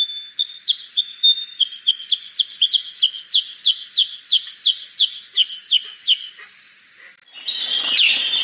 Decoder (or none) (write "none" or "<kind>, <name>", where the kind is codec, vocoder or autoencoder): none